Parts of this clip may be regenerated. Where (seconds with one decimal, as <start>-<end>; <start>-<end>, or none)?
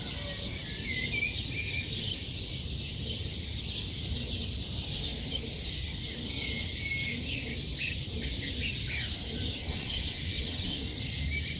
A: 9.6-10.8